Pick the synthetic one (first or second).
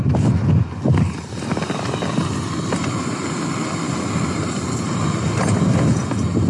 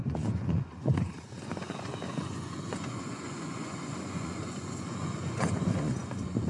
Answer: second